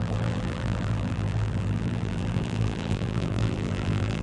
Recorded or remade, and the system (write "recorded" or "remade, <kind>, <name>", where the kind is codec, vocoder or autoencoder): remade, vocoder, BigVGAN v2